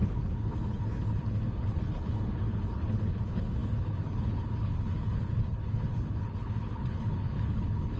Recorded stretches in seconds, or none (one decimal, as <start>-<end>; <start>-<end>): none